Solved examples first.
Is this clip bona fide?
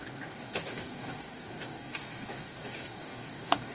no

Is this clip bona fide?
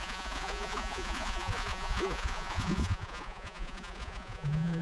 no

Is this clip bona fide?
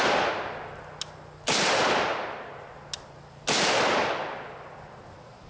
yes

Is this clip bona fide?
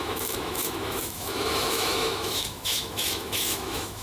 no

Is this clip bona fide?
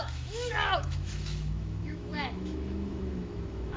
no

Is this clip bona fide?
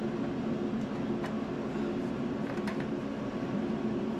yes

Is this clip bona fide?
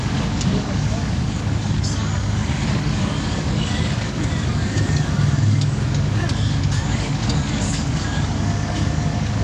no